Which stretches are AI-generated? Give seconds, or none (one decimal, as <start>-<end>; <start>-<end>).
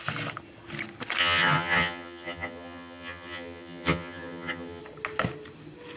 1.2-4.8